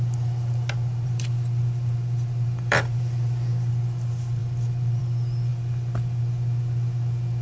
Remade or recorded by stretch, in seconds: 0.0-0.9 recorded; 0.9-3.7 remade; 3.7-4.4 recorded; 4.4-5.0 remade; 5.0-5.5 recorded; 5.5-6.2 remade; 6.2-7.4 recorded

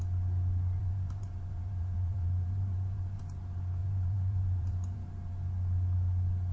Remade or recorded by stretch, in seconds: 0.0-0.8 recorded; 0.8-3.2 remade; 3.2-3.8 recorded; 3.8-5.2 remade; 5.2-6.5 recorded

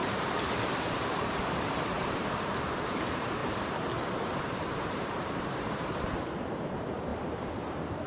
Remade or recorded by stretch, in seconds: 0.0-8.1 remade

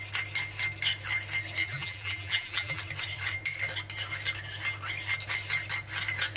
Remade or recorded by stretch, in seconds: 0.0-1.6 recorded; 1.6-2.8 remade; 2.8-6.4 recorded

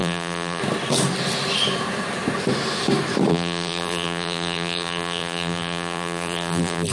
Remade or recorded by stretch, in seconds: 0.0-0.6 remade; 0.6-3.3 recorded; 3.3-6.9 remade

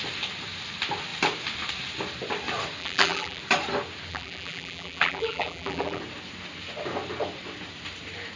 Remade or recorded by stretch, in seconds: 0.0-2.8 recorded; 2.8-3.4 remade; 3.4-4.1 recorded; 4.1-6.0 remade; 6.0-8.4 recorded

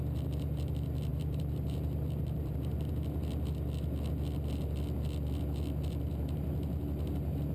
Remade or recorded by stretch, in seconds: 0.0-1.1 recorded; 1.1-2.9 remade; 2.9-7.5 recorded

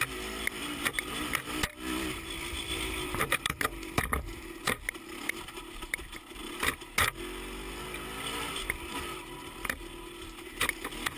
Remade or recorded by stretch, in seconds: 0.0-6.4 remade; 6.4-9.5 recorded; 9.5-11.2 remade